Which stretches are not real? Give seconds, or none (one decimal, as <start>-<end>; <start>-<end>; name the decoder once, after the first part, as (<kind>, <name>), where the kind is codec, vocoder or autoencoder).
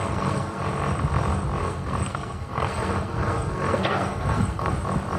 0.0-0.6 (codec, SNAC); 1.6-4.7